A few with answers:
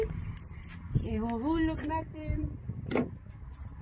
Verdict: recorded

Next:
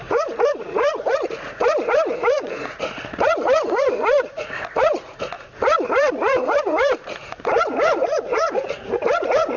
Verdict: remade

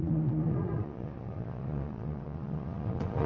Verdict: remade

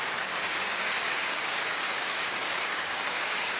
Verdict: remade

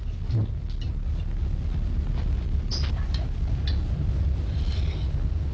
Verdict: recorded